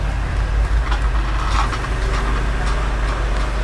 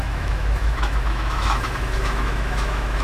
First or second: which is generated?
second